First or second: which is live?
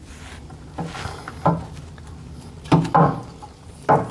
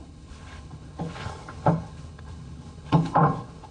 first